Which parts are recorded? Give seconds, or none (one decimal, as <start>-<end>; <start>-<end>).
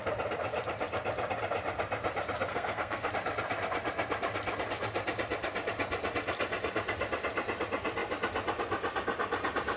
0.0-2.5; 3.1-9.8